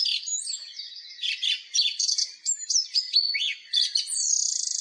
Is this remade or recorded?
recorded